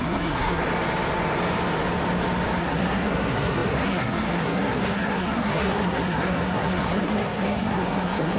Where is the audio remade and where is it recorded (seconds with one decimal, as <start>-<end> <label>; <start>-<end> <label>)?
0.0-0.6 remade; 0.6-2.6 recorded; 2.6-8.4 remade